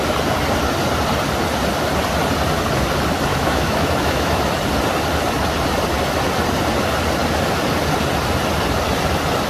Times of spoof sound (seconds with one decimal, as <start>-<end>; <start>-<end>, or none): 3.3-4.5